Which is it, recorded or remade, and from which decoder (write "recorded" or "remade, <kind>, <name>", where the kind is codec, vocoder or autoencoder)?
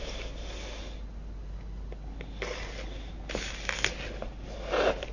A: recorded